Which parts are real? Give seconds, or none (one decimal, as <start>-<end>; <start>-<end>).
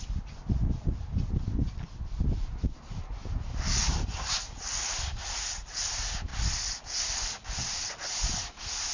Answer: 0.0-8.9